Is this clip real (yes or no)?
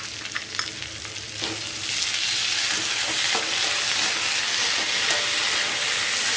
yes